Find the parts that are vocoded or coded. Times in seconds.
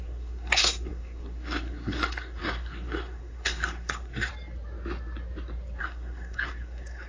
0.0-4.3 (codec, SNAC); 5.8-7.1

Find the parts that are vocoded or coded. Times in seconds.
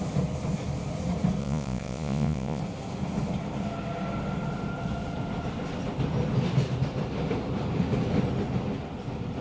1.4-2.6 (vocoder, Vocos)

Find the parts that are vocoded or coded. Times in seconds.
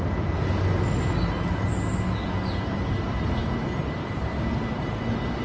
3.4-5.0 (vocoder, BigVGAN v2)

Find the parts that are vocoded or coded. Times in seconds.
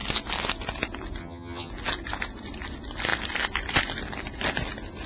1.2-1.7 (vocoder, HiFi-GAN)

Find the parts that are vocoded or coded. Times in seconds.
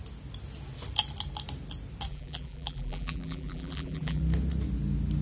2.1-4.2 (vocoder, BigVGAN v2)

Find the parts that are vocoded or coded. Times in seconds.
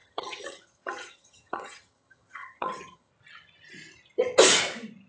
0.0-3.1 (vocoder, HiFi-GAN)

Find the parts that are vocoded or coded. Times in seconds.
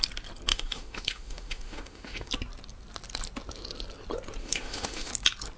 0.5-2.3 (autoencoder, DAC-VAE); 4.4-5.1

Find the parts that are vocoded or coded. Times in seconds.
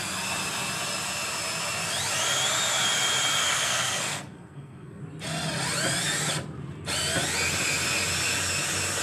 3.4-5.0 (codec, SNAC)